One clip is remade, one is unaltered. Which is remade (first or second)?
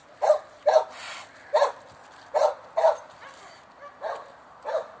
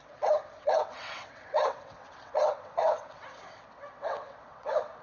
second